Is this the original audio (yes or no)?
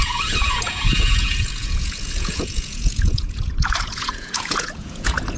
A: no